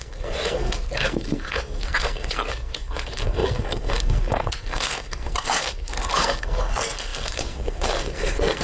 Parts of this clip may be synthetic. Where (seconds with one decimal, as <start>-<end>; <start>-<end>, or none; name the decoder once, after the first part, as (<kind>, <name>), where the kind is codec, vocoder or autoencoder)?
0.0-8.6 (codec, SNAC)